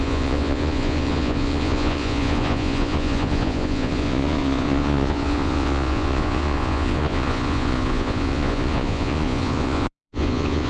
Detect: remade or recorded remade